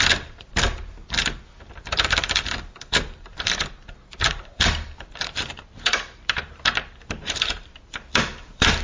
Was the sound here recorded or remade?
remade